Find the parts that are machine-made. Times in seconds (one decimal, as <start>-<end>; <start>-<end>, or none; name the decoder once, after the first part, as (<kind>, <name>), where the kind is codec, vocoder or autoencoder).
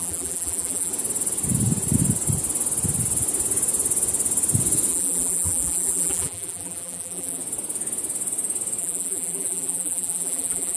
0.0-0.9 (vocoder, BigVGAN v2); 4.9-7.4; 8.8-10.8